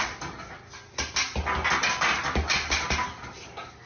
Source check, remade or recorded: recorded